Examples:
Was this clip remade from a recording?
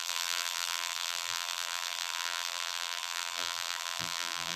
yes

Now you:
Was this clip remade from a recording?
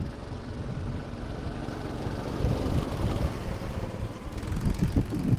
no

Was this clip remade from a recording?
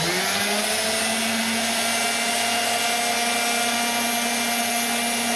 no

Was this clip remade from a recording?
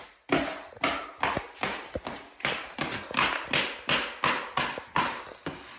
no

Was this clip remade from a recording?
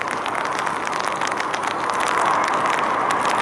no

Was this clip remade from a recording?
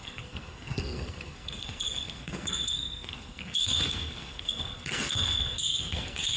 yes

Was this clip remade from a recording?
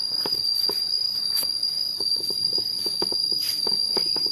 yes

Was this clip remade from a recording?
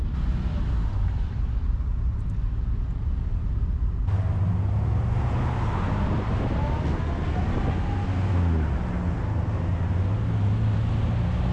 no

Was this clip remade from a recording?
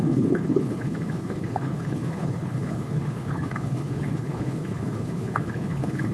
yes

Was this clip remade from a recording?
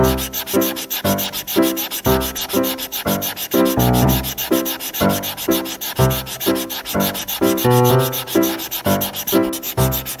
no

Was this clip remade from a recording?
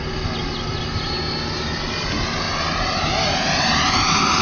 no